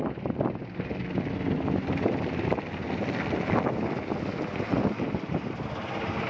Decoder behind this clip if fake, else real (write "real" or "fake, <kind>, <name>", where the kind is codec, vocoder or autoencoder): fake, vocoder, BigVGAN v2